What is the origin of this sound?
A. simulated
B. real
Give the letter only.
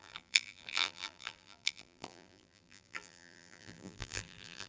A